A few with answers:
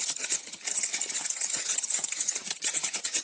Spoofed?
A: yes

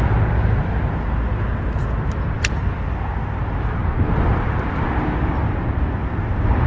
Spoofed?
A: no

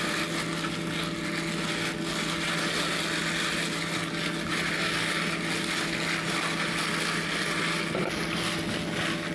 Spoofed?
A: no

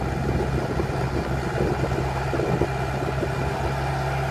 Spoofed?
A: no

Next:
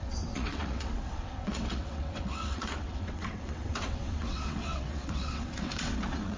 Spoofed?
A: yes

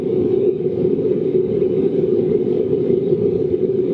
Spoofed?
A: yes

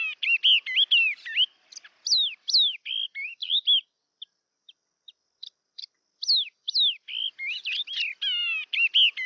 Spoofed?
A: no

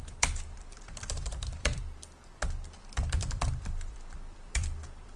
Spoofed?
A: yes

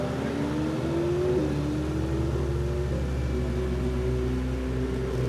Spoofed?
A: no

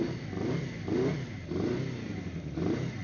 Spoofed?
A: no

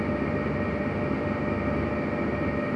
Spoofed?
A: no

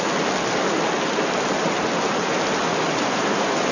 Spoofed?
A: no